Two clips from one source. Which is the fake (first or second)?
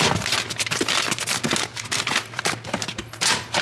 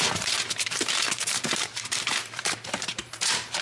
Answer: second